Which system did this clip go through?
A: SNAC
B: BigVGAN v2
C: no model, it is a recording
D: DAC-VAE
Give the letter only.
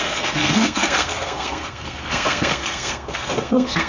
A